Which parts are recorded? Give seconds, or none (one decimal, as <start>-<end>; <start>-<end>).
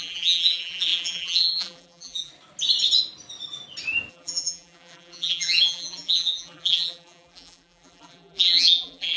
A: 2.3-4.1